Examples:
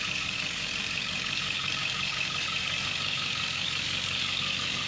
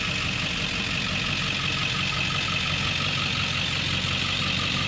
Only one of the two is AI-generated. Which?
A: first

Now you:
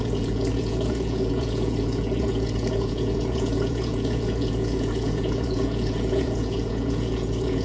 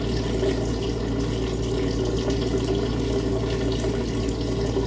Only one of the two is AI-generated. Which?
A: first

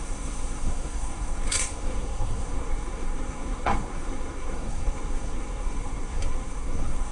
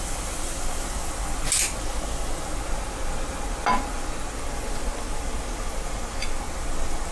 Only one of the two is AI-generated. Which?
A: first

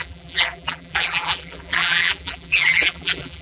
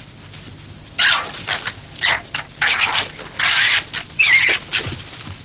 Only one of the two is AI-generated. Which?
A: first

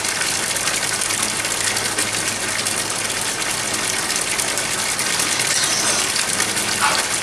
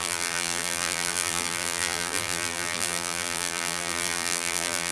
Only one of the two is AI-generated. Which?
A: second